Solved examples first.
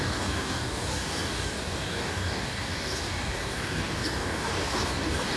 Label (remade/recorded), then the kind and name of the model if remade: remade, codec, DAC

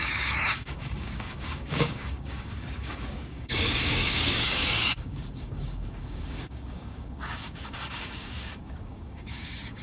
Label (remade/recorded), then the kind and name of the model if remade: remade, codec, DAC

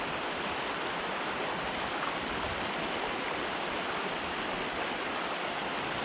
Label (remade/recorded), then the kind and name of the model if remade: recorded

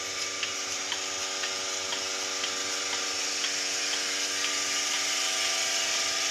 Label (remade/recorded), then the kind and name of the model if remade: recorded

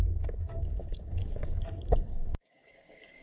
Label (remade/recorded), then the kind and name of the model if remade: remade, codec, DAC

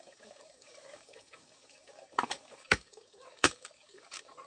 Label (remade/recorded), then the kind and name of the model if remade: remade, codec, DAC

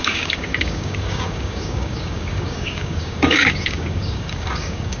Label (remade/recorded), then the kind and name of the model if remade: remade, codec, DAC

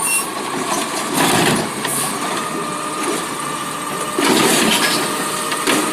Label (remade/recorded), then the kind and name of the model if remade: recorded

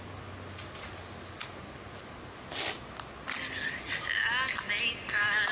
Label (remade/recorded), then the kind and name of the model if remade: recorded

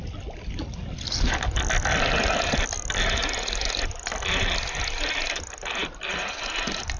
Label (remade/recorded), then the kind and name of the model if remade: recorded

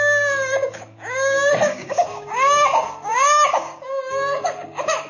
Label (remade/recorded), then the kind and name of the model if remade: remade, codec, DAC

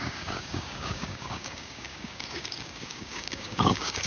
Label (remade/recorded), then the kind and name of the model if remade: remade, codec, DAC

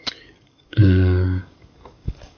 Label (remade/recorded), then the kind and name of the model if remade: remade, codec, DAC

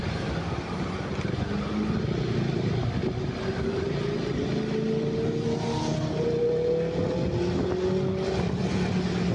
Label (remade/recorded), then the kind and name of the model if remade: recorded